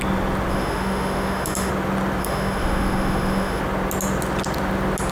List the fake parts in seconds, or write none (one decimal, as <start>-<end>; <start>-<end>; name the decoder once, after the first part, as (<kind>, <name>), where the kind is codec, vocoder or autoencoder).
0.5-1.7 (autoencoder, DAC-VAE); 2.2-3.6